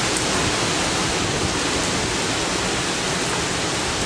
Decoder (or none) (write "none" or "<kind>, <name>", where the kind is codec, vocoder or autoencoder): vocoder, BigVGAN v2